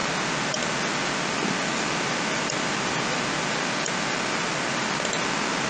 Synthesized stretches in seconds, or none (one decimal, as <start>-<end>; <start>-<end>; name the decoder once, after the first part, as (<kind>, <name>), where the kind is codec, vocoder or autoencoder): none